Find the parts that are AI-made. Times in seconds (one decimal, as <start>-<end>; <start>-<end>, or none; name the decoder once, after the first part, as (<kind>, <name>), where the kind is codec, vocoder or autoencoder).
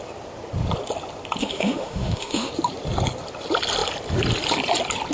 1.4-2.5 (autoencoder, DAC-VAE)